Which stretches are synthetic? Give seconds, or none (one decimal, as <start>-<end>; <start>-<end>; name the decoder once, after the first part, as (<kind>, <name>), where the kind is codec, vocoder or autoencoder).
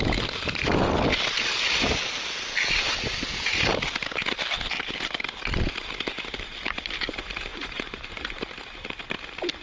7.5-8.4 (vocoder, Vocos)